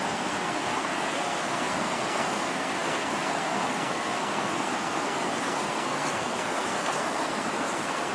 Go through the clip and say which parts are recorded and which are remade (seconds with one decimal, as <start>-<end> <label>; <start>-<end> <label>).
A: 0.0-8.1 remade